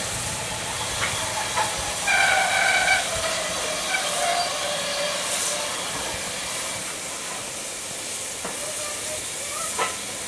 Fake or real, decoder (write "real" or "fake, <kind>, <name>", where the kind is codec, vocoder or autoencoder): real